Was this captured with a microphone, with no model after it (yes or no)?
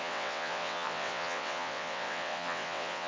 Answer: no